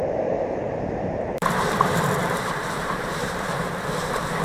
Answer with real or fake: fake